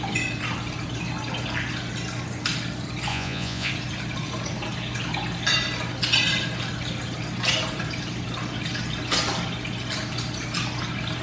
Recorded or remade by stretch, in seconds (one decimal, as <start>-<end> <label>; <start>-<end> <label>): 0.0-3.1 recorded; 3.1-3.7 remade; 3.7-11.2 recorded